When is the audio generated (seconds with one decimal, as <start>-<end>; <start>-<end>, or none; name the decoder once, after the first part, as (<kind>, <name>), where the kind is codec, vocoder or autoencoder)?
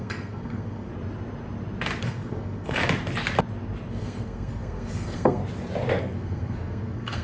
0.0-0.9 (codec, SNAC); 2.0-2.8; 3.9-5.4; 6.0-7.2